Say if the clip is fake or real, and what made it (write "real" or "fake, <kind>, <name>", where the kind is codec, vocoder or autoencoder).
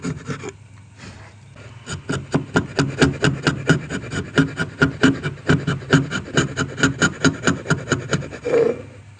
real